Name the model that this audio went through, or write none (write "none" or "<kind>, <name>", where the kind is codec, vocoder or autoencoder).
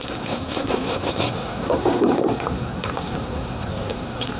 codec, SNAC